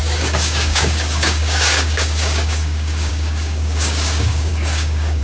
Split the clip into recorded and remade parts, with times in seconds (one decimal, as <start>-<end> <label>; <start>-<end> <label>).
0.0-5.2 remade